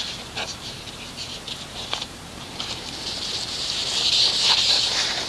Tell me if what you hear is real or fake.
fake